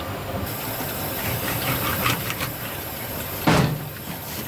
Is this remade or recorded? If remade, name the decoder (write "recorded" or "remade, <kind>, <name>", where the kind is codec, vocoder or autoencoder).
recorded